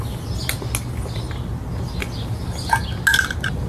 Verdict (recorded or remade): recorded